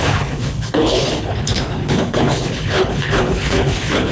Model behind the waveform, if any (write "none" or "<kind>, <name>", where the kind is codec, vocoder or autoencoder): codec, HILCodec